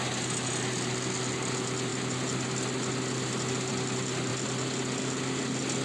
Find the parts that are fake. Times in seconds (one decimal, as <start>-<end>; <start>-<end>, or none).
none